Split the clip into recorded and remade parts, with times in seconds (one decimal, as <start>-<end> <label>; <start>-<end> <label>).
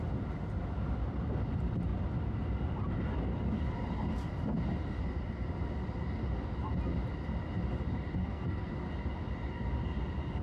0.0-8.2 recorded; 8.2-8.7 remade; 8.7-10.4 recorded